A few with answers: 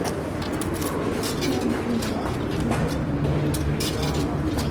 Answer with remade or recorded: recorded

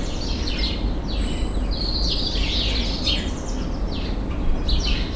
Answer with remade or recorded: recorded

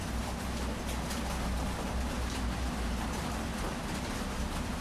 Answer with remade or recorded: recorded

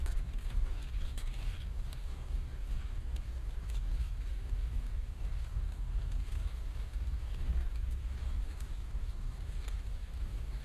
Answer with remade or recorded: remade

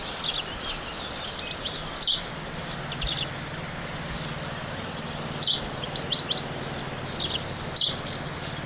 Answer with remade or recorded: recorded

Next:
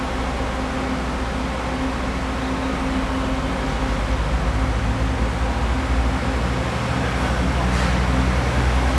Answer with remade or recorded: recorded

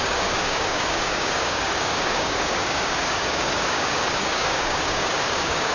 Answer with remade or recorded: remade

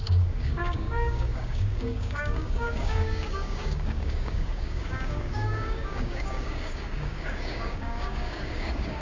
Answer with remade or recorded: remade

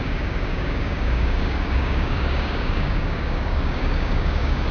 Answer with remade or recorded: remade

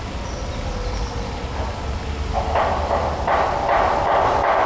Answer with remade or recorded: recorded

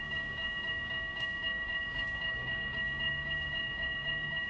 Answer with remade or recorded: remade